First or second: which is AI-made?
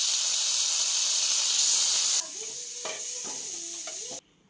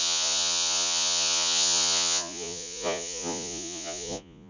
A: second